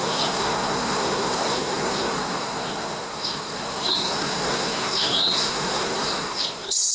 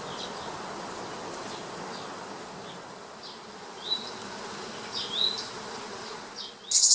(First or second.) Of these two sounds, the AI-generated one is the first